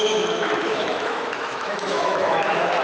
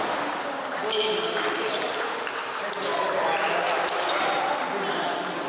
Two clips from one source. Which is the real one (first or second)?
second